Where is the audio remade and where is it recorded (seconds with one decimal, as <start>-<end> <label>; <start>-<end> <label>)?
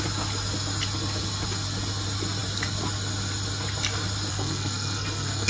0.0-4.3 recorded; 4.3-5.5 remade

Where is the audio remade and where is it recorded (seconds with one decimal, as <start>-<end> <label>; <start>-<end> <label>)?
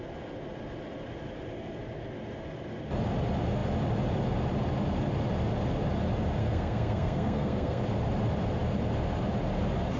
0.0-6.4 recorded; 6.4-7.8 remade; 7.8-10.0 recorded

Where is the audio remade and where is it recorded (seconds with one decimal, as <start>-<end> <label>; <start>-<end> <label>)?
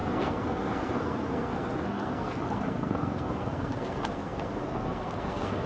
0.0-5.7 remade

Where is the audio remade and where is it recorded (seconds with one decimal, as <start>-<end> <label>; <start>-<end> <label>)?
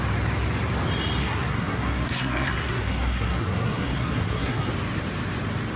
0.0-1.2 recorded; 1.2-4.7 remade; 4.7-5.8 recorded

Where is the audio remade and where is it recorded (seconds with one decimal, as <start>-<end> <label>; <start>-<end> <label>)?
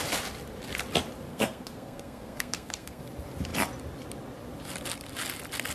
0.0-1.3 recorded; 1.3-3.0 remade; 3.0-5.7 recorded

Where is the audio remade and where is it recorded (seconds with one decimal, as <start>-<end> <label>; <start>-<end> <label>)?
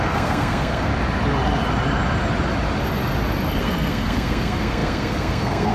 0.0-0.9 remade; 0.9-3.6 recorded; 3.6-5.7 remade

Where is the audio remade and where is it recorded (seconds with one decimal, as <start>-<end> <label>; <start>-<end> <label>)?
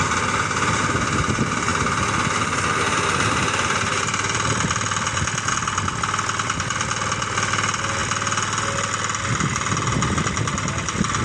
0.0-11.2 recorded